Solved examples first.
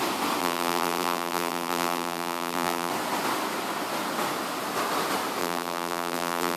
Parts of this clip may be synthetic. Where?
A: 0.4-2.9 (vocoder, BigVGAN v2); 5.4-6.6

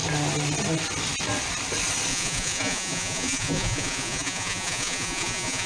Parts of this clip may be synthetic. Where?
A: 2.1-5.7 (vocoder, Vocos)

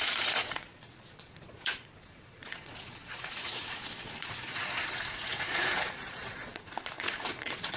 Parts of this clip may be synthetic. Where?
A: 0.0-7.8 (vocoder, Vocos)

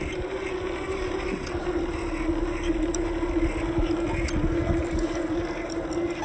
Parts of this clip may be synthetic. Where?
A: none

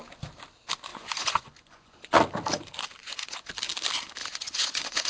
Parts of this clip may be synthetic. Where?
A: 0.9-2.2 (vocoder, Vocos); 3.0-3.5; 4.2-5.1

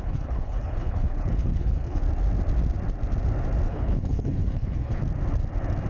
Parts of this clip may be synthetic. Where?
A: 0.0-2.0 (codec, HILCodec); 3.7-5.0

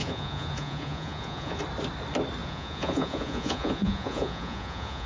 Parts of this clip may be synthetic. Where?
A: 0.0-1.6 (vocoder, Vocos); 2.4-5.1

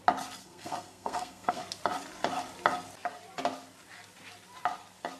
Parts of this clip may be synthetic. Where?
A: 0.4-1.6 (codec, SNAC)